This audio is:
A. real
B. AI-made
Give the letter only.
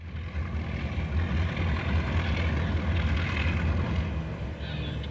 A